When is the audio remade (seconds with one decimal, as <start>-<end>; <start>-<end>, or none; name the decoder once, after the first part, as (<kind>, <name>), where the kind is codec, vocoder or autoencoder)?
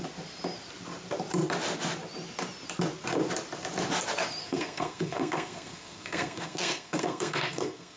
4.4-8.0 (codec, SNAC)